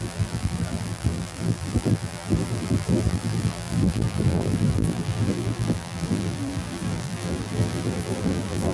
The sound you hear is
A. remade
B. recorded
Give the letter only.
A